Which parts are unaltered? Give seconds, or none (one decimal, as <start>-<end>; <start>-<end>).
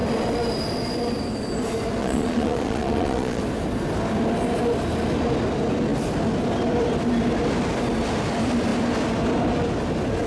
0.0-2.0; 3.4-10.3